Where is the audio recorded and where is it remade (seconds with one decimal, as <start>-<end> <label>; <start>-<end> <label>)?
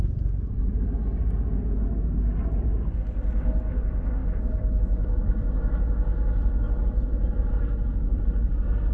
0.0-4.2 recorded; 4.2-4.8 remade; 4.8-8.9 recorded